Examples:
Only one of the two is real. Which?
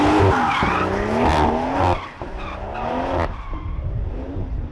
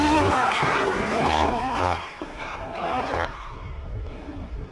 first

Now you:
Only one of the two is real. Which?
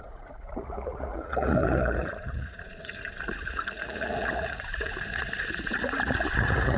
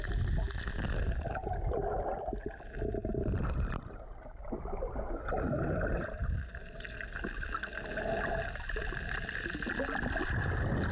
second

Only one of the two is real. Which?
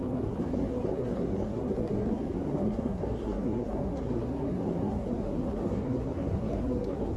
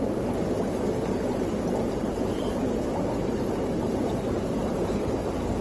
second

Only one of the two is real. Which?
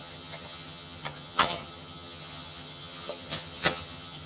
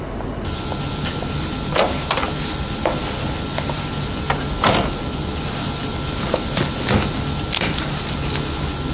second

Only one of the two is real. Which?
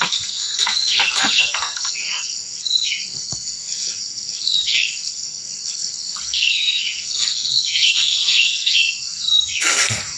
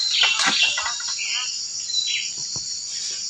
second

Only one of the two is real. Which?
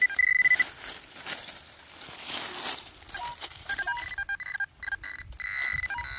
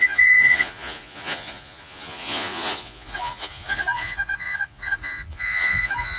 first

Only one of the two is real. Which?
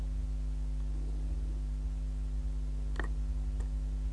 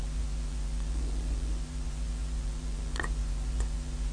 first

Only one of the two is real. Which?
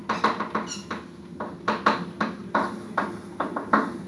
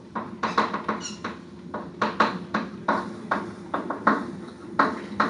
first